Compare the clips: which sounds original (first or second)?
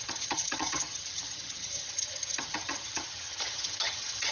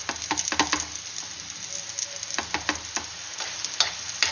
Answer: second